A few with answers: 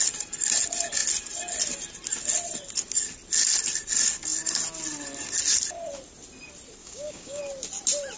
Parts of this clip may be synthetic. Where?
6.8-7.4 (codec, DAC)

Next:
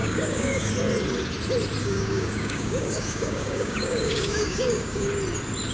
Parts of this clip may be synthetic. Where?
0.0-0.7 (codec, DAC); 1.8-5.1

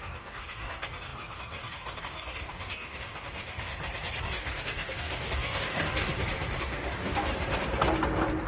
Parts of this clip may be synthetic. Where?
0.0-3.7 (codec, DAC); 4.2-6.1; 6.6-7.3

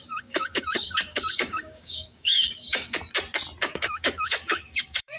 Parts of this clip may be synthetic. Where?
0.0-3.0 (codec, DAC); 3.6-5.2

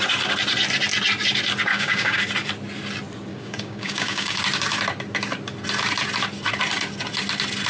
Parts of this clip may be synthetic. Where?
1.7-2.2 (codec, DAC); 3.3-4.4

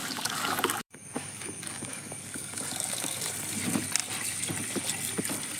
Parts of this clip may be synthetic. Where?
0.0-3.2 (codec, DAC)

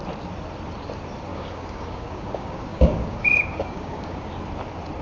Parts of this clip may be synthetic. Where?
1.3-4.3 (codec, DAC)

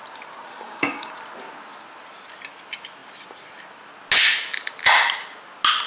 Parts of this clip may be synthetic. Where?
0.5-1.1 (codec, DAC)